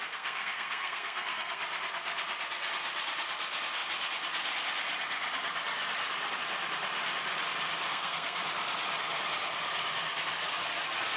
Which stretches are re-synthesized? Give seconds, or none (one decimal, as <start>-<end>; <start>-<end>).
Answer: 0.0-1.6; 7.9-8.4